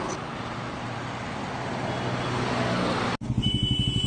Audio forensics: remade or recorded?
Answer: recorded